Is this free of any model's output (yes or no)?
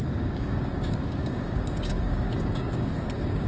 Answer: no